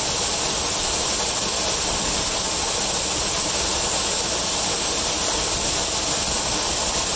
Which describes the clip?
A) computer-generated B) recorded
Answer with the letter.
B